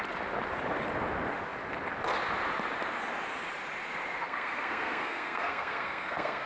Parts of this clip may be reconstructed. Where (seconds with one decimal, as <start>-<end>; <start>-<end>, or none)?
4.2-6.5